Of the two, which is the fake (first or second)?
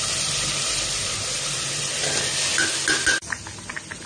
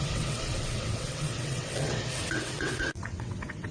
second